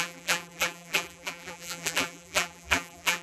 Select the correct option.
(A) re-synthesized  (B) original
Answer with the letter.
A